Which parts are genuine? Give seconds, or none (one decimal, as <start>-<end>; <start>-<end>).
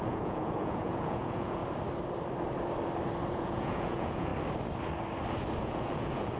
1.6-3.3; 4.3-5.6